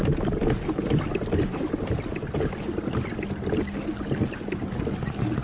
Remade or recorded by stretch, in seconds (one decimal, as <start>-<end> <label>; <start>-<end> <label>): 0.0-5.4 recorded